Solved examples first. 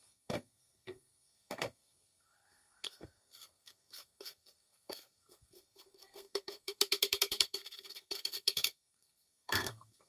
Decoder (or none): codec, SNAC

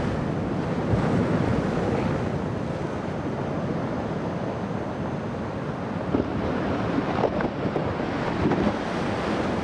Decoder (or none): none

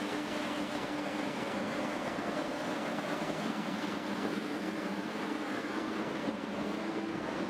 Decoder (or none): codec, SNAC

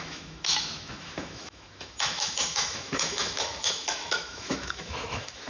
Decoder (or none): autoencoder, DAC-VAE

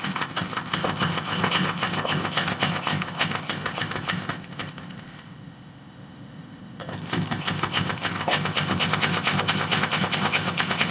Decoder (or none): codec, ZipCodec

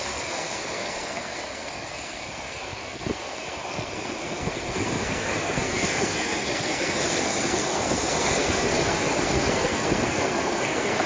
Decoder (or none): codec, SNAC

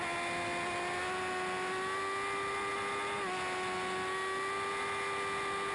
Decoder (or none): none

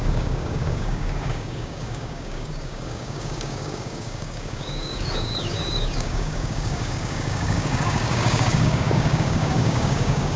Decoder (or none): codec, DAC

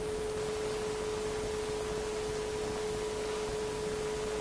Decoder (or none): none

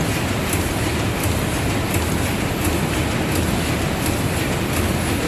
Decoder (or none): none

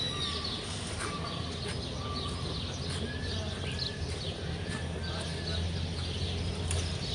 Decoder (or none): none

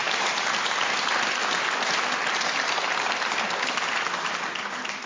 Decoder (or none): none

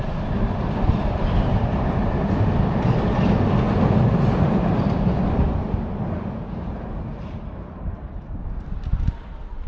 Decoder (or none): none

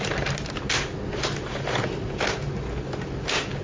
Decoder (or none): none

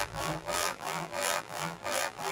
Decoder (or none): vocoder, BigVGAN v2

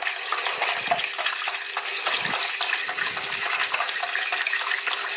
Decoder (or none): none